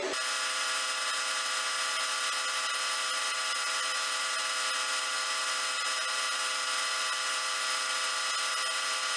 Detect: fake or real real